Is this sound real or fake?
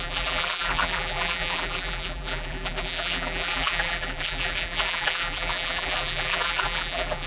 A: fake